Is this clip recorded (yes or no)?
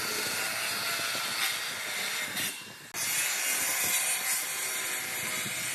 yes